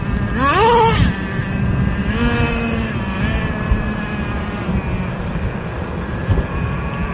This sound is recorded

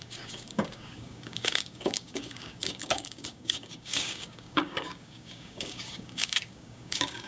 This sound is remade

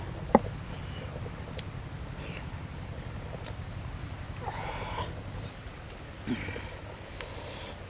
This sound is recorded